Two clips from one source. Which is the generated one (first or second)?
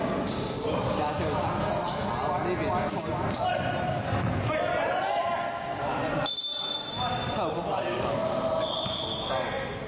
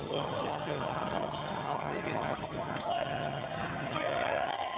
second